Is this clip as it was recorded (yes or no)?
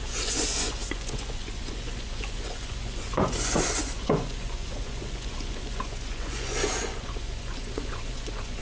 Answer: no